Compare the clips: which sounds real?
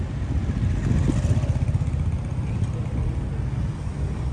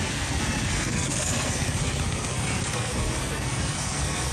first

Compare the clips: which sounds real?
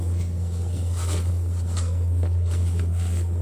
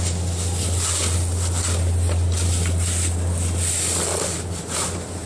second